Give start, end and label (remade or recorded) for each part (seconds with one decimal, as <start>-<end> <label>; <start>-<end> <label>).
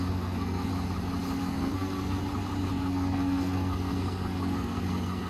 0.0-0.7 remade; 0.7-1.4 recorded; 1.4-2.2 remade; 2.2-2.7 recorded; 2.7-5.3 remade